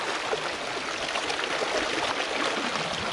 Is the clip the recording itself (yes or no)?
yes